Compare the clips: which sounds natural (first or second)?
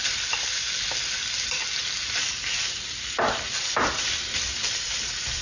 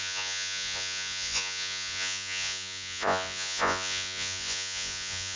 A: first